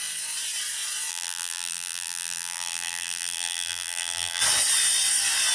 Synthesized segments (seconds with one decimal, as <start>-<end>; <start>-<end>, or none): 1.1-4.4